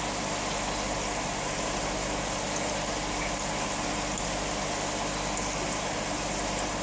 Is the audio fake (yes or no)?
no